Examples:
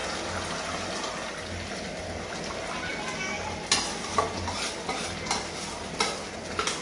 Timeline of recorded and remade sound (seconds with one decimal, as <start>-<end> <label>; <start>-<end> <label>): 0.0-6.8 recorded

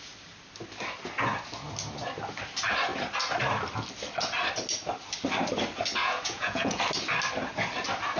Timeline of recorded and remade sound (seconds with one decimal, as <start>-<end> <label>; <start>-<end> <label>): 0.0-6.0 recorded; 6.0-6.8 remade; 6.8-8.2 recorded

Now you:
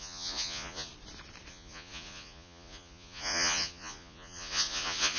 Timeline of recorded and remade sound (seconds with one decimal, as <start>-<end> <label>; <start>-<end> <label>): 0.0-0.9 remade; 0.9-1.5 recorded; 1.5-5.2 remade

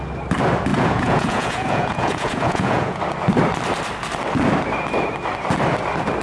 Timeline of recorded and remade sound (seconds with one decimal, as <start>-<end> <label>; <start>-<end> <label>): 0.0-0.7 recorded; 0.7-3.0 remade; 3.0-6.2 recorded

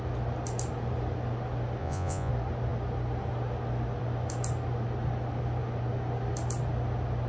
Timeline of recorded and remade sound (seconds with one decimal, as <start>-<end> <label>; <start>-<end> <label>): 0.0-1.8 recorded; 1.8-2.3 remade; 2.3-7.3 recorded

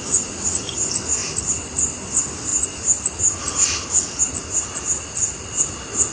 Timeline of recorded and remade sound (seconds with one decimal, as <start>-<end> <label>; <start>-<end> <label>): 0.0-6.1 recorded